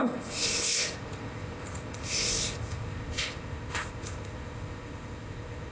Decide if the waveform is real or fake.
fake